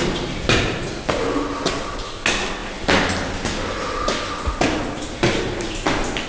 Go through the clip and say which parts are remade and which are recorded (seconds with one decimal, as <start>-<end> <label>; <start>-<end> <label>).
0.0-0.8 remade; 0.8-6.3 recorded